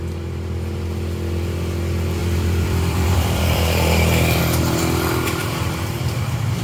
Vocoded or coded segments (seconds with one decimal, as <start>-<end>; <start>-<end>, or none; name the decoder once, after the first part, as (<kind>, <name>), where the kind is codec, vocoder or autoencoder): 2.2-4.4 (vocoder, BigVGAN v2); 5.4-6.6